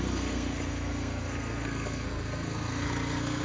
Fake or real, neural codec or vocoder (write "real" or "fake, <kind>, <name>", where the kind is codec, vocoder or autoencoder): fake, codec, SNAC